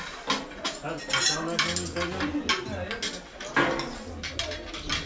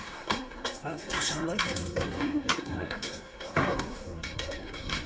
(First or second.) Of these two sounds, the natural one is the first